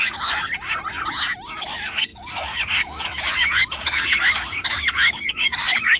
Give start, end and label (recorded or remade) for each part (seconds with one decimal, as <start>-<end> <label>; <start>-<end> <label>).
0.0-0.5 remade; 0.5-1.6 recorded; 1.6-6.0 remade